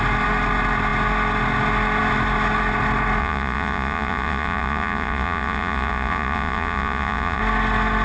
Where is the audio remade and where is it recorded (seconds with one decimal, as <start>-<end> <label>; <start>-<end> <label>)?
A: 0.0-3.2 recorded; 3.2-7.4 remade; 7.4-8.0 recorded